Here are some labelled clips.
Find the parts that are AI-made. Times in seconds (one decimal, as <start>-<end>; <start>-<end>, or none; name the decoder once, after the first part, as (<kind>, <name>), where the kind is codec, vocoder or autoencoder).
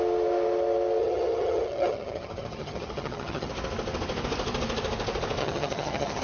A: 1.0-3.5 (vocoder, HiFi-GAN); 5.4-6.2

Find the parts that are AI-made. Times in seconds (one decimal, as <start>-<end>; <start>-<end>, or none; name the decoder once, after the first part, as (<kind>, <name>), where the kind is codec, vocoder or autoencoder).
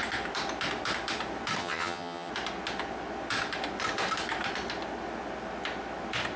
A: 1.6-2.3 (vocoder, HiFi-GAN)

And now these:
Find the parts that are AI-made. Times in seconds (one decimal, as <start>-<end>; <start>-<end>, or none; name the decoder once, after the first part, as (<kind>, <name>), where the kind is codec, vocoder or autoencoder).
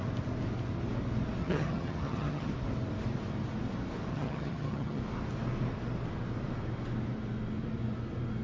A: 1.4-2.5 (vocoder, HiFi-GAN); 4.1-5.0